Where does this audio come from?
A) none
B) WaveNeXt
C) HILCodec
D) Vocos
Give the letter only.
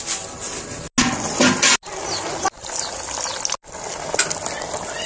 A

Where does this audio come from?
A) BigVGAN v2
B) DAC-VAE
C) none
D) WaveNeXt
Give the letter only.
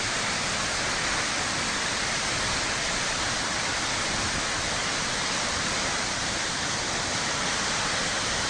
C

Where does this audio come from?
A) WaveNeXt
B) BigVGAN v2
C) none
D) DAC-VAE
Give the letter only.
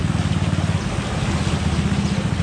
C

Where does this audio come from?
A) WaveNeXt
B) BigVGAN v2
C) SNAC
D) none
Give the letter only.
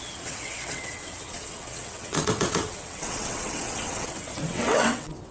A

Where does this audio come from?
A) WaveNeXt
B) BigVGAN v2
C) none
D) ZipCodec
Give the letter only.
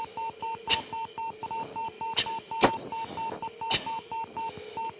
C